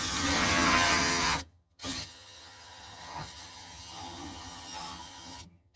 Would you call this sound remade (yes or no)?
yes